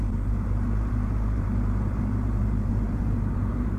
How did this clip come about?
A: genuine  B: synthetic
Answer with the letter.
B